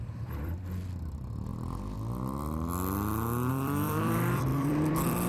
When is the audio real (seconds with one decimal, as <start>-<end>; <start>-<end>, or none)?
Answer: 1.5-3.5